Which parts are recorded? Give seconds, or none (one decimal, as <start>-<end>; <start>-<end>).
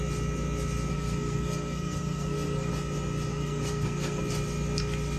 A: 0.0-0.9; 2.7-3.3; 4.2-5.2